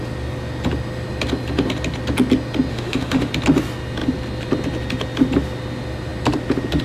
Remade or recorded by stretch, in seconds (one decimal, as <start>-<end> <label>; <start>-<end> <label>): 0.0-2.7 recorded; 2.7-3.3 remade; 3.3-6.8 recorded